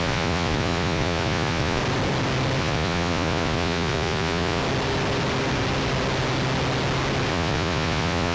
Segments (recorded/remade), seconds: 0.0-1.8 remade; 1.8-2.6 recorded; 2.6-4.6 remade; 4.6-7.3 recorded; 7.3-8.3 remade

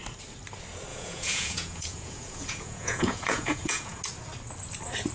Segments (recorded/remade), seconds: 0.0-0.9 recorded; 0.9-4.0 remade; 4.0-5.1 recorded